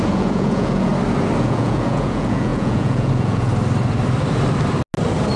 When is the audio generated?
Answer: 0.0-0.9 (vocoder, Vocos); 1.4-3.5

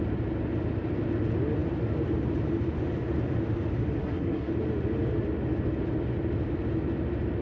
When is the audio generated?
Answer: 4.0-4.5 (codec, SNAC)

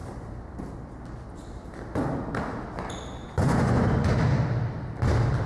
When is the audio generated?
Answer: 3.2-4.1 (vocoder, Vocos)

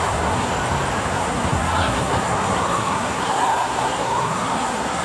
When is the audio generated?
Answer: 0.0-0.5 (codec, SNAC); 1.0-5.0

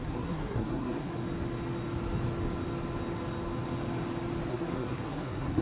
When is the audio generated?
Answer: 0.0-1.1 (codec, SNAC); 4.5-5.6

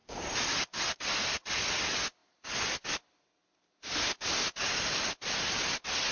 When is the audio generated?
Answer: 0.0-0.8 (vocoder, BigVGAN v2)

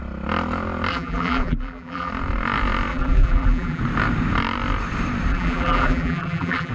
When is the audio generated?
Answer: 0.9-2.1 (vocoder, BigVGAN v2); 2.9-3.8; 5.3-6.7